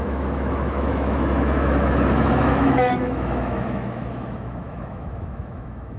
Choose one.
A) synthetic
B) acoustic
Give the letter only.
A